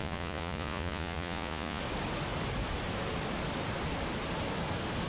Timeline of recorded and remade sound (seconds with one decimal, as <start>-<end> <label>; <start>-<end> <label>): 0.0-1.8 remade; 1.8-5.1 recorded